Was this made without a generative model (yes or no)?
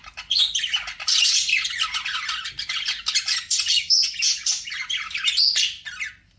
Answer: yes